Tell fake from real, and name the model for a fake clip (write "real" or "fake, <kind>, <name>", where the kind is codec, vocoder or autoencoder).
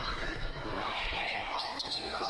fake, codec, SNAC